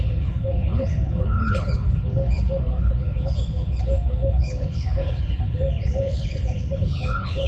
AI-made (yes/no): yes